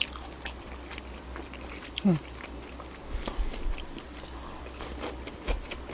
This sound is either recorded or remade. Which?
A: recorded